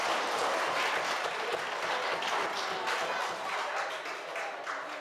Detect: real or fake real